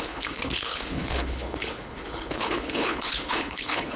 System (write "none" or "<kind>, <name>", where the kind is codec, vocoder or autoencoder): codec, HILCodec